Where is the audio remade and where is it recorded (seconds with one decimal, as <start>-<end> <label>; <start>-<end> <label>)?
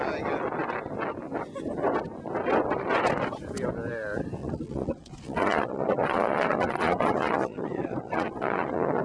0.0-4.4 recorded; 4.4-9.0 remade